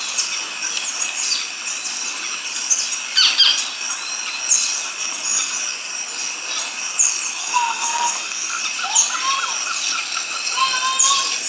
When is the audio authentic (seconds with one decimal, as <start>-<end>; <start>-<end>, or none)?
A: 0.0-7.4; 8.6-11.5

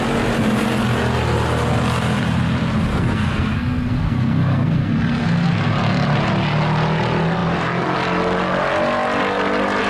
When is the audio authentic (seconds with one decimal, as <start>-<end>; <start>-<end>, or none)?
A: 0.0-2.9; 5.7-9.9

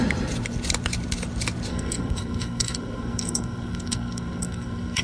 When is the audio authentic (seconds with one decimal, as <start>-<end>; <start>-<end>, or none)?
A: 0.0-1.7

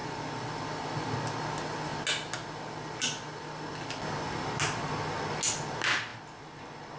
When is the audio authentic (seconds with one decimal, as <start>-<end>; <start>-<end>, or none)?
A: 0.0-7.0

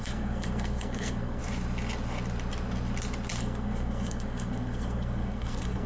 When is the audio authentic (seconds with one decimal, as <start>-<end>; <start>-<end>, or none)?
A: 1.4-3.4

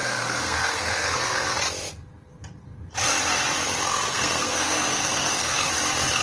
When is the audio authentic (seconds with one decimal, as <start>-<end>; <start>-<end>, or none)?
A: 1.6-3.9; 5.7-6.2